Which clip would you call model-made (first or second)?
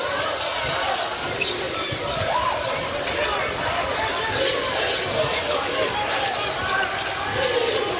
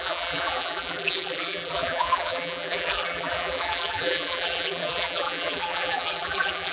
second